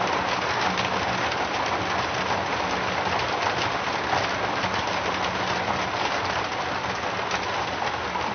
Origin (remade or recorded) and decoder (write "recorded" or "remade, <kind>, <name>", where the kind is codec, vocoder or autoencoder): recorded